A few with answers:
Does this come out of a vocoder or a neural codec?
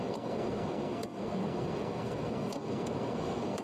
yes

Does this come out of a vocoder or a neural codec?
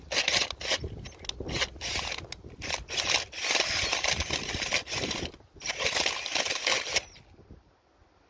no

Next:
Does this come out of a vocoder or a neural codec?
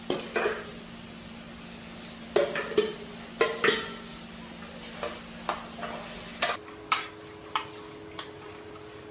no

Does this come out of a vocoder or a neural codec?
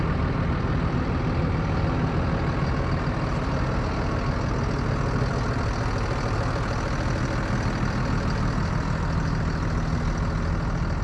no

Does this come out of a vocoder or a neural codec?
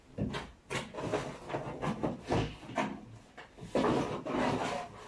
no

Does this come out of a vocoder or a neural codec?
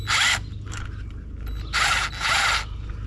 no